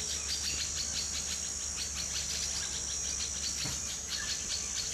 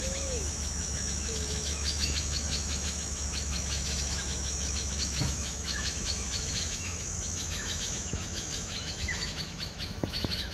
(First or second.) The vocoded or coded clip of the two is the second